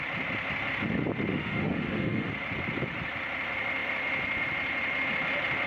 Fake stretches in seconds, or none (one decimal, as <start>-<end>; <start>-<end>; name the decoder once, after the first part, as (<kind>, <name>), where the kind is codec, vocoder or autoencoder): 1.3-2.3 (autoencoder, DAC-VAE)